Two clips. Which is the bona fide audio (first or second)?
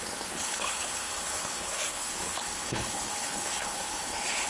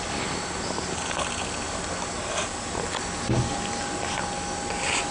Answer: second